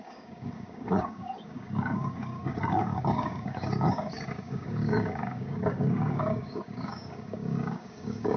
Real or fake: fake